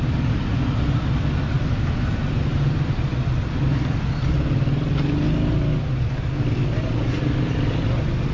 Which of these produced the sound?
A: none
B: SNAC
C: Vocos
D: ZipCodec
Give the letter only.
A